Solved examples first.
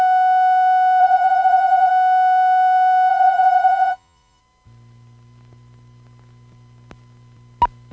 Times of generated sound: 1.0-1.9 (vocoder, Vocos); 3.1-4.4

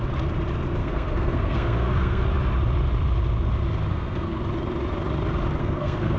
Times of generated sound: 0.8-2.2 (codec, SNAC); 3.9-4.4; 5.6-6.2

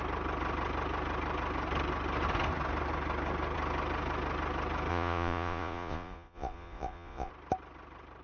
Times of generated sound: 4.9-7.3 (vocoder, Vocos)

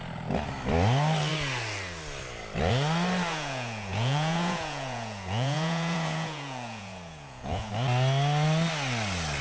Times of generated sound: 3.3-7.7 (vocoder, Vocos)

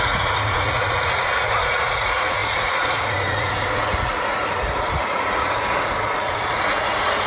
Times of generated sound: 0.0-7.3 (vocoder, Vocos)

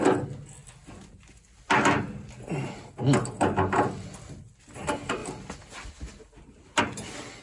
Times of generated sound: none